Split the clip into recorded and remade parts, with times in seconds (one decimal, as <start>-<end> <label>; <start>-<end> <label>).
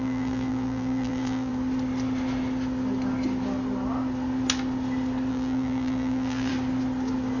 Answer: 0.0-1.5 remade; 1.5-5.3 recorded; 5.3-6.5 remade; 6.5-7.4 recorded